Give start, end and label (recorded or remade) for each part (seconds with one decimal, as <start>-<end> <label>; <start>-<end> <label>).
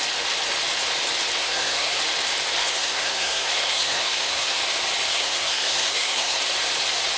0.0-1.4 recorded; 1.4-2.0 remade; 2.0-2.6 recorded; 2.6-4.6 remade; 4.6-5.1 recorded; 5.1-6.4 remade; 6.4-7.2 recorded